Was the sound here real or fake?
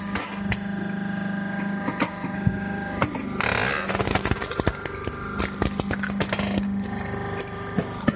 real